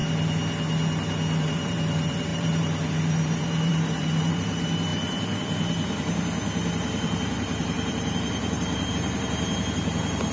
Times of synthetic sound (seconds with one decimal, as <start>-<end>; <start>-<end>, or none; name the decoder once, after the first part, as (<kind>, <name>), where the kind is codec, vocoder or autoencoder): 1.4-10.3 (vocoder, BigVGAN v2)